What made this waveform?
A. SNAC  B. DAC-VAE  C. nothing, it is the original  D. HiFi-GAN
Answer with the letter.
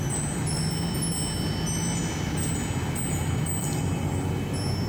C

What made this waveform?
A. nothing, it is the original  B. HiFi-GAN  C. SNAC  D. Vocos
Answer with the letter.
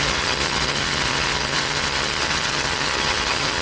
B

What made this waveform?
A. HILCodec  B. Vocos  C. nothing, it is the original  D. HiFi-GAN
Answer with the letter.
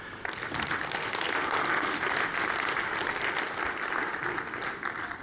C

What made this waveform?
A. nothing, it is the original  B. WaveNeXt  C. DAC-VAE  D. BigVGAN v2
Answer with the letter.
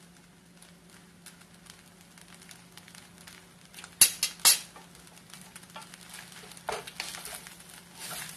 A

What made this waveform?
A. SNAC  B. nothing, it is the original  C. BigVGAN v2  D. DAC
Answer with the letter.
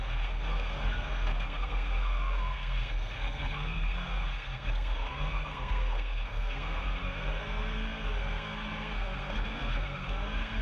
A